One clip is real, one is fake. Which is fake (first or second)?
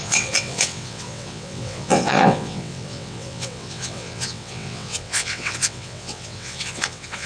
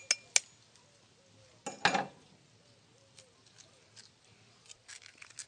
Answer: first